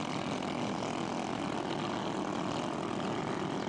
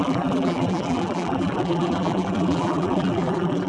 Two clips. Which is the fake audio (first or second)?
second